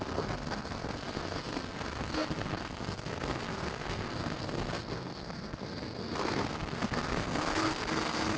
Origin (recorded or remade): remade